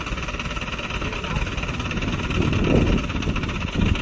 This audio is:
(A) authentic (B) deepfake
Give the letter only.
A